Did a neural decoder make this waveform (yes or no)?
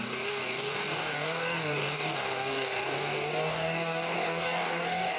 yes